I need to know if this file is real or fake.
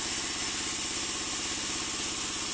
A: real